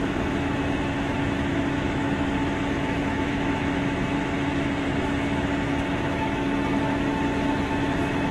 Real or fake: fake